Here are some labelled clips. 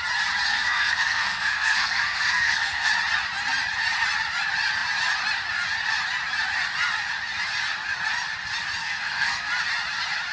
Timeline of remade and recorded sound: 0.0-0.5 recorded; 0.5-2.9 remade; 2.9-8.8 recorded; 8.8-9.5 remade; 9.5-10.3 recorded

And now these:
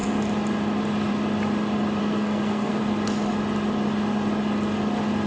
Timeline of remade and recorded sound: 0.0-2.0 recorded; 2.0-2.8 remade; 2.8-5.3 recorded

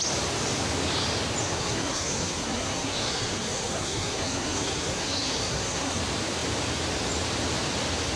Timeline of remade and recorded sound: 0.0-1.4 recorded; 1.4-6.0 remade; 6.0-8.2 recorded

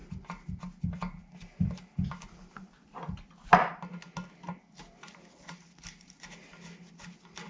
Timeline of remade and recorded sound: 0.0-7.5 recorded